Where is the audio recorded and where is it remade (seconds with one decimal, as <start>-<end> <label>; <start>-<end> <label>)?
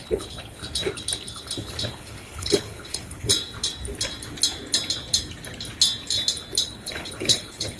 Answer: 0.0-0.6 remade; 0.6-1.9 recorded; 1.9-3.3 remade; 3.3-6.6 recorded; 6.6-7.8 remade